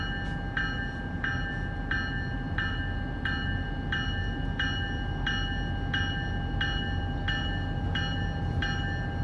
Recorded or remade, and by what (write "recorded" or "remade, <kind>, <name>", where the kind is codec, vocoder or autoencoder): recorded